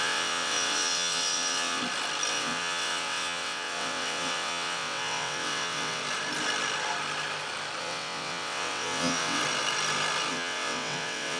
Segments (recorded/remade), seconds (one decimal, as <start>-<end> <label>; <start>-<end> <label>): 0.0-1.8 remade; 1.8-2.3 recorded; 2.3-6.0 remade; 6.0-7.8 recorded; 7.8-9.4 remade; 9.4-10.3 recorded; 10.3-11.4 remade